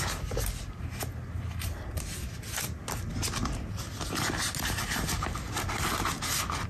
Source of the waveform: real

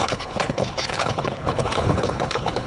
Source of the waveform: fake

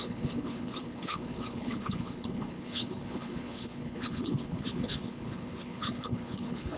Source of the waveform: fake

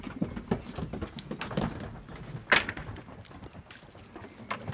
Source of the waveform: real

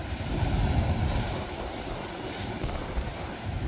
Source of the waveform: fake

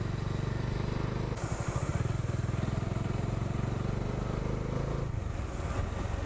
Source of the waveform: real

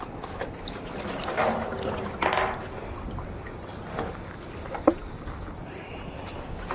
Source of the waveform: real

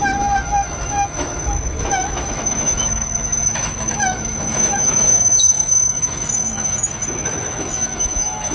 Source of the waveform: fake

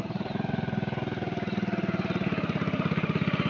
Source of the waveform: real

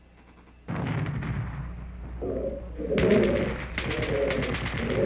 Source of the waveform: real